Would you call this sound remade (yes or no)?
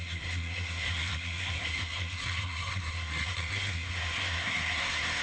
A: yes